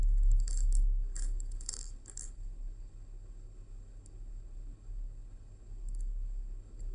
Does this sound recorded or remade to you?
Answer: remade